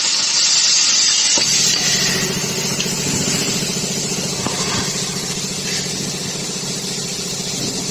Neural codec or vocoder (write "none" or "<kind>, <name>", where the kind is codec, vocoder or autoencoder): none